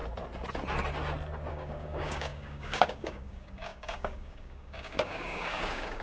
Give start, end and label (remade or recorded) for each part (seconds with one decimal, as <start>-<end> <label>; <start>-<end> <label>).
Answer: 0.0-1.5 recorded; 1.5-6.0 remade